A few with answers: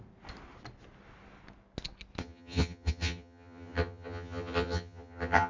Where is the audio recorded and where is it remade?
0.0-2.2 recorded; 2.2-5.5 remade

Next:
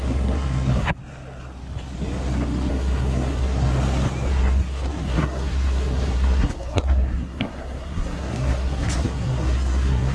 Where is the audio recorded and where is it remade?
0.0-1.0 remade; 1.0-2.7 recorded; 2.7-3.7 remade; 3.7-4.3 recorded; 4.3-10.1 remade

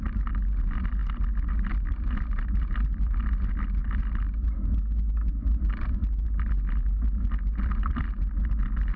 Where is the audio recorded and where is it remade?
0.0-9.0 recorded

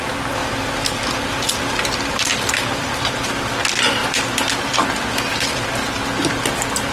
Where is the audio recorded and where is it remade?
0.0-0.4 recorded; 0.4-1.8 remade; 1.8-2.3 recorded; 2.3-3.1 remade; 3.1-6.9 recorded

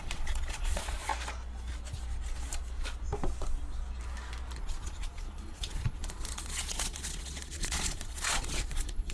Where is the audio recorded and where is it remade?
0.0-1.1 remade; 1.1-4.6 recorded; 4.6-9.1 remade

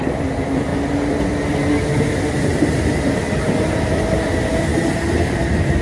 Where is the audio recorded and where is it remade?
0.0-2.5 recorded; 2.5-3.2 remade; 3.2-4.7 recorded; 4.7-5.8 remade